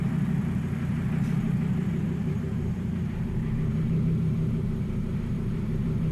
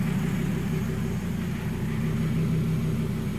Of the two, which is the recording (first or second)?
second